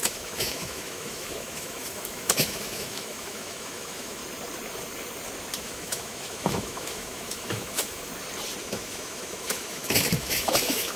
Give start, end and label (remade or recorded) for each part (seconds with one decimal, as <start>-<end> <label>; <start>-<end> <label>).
0.0-4.2 remade; 4.2-5.6 recorded; 5.6-8.1 remade; 8.1-8.6 recorded; 8.6-11.0 remade